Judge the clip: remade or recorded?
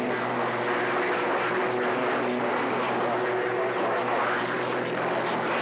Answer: remade